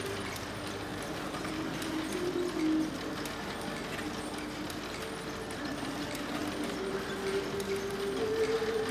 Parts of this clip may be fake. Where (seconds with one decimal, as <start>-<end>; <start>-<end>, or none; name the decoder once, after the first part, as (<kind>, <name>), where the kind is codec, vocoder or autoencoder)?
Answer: 0.9-2.0 (vocoder, BigVGAN v2)